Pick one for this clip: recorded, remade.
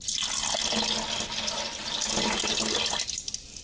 recorded